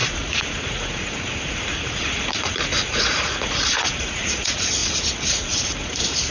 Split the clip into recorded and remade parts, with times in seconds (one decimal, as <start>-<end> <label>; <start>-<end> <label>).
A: 0.0-6.3 remade